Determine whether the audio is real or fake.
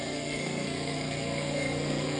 fake